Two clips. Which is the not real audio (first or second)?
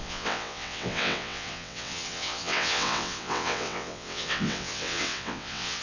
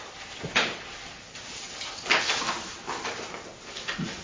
first